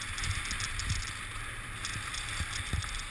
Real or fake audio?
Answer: real